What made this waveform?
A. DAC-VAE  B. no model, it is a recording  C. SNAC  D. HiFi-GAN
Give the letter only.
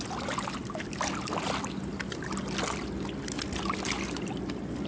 B